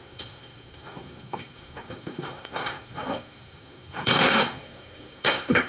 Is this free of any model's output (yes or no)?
no